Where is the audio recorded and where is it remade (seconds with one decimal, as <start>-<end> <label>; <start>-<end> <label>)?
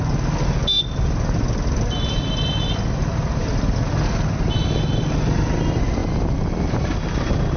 0.0-7.6 recorded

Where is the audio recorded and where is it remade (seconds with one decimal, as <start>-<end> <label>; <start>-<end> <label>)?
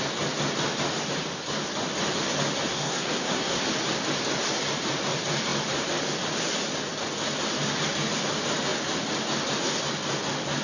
0.0-2.7 recorded; 2.7-3.6 remade; 3.6-10.6 recorded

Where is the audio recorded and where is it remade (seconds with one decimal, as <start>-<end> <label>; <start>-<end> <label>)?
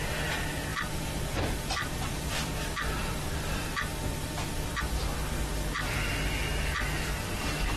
0.0-0.7 recorded; 0.7-4.8 remade; 4.8-7.8 recorded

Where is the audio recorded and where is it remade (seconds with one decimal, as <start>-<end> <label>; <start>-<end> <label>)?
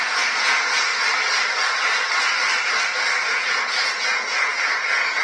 0.0-0.9 remade; 0.9-3.3 recorded; 3.3-5.2 remade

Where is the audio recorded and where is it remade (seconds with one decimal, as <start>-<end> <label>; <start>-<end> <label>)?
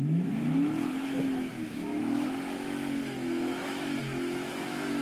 0.0-5.0 remade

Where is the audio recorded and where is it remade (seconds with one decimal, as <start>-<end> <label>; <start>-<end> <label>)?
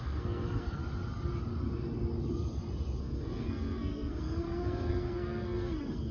0.0-0.8 remade; 0.8-3.0 recorded; 3.0-6.1 remade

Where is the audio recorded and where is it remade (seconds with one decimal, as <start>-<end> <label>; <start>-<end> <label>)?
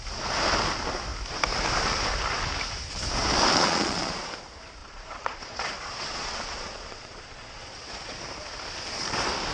0.0-3.5 recorded; 3.5-4.3 remade; 4.3-4.8 recorded; 4.8-8.2 remade; 8.2-9.5 recorded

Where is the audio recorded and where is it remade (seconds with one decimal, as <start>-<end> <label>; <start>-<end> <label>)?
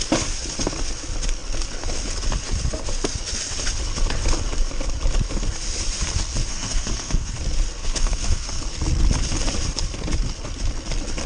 0.0-6.5 recorded; 6.5-7.3 remade; 7.3-7.8 recorded; 7.8-8.6 remade; 8.6-11.3 recorded